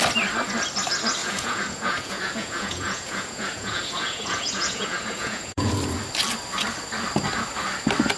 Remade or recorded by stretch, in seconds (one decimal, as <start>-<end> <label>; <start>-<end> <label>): 0.0-1.2 recorded; 1.2-5.7 remade; 5.7-8.2 recorded